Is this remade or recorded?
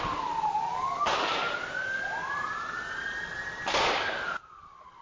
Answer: recorded